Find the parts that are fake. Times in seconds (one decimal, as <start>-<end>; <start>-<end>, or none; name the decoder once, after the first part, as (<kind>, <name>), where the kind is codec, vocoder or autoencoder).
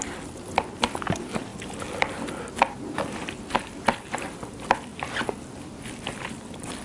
0.0-1.5 (vocoder, BigVGAN v2); 2.7-4.9; 5.8-6.8